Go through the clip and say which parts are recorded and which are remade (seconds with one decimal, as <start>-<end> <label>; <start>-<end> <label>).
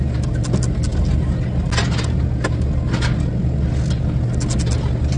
0.0-5.2 recorded